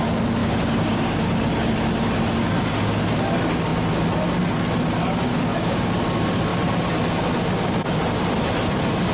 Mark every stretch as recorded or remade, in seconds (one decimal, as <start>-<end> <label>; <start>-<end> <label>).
0.0-0.4 recorded; 0.4-1.3 remade; 1.3-5.3 recorded; 5.3-5.9 remade; 5.9-9.1 recorded